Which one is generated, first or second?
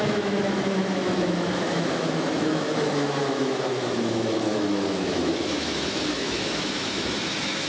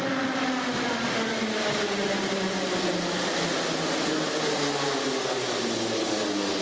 first